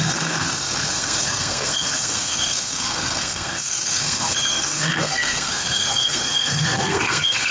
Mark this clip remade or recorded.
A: remade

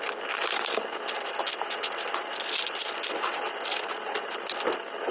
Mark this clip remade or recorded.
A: recorded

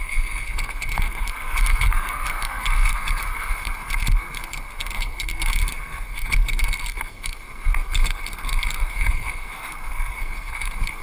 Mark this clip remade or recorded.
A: remade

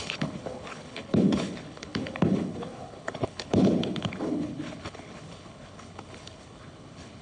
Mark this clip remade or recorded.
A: remade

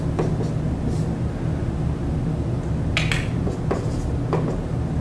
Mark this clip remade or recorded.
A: recorded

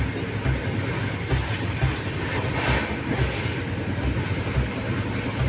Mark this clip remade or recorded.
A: recorded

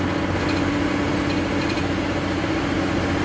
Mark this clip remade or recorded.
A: recorded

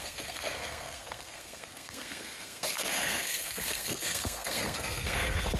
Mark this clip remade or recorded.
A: remade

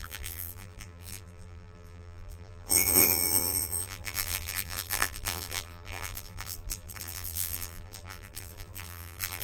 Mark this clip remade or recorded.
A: remade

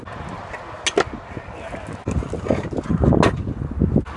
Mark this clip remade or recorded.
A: recorded